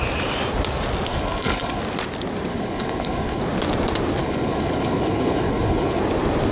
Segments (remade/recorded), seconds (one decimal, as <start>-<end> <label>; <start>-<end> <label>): 0.0-1.1 recorded; 1.1-1.8 remade; 1.8-2.5 recorded; 2.5-3.4 remade; 3.4-4.2 recorded; 4.2-6.0 remade; 6.0-6.5 recorded